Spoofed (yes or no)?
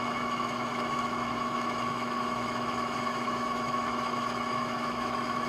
yes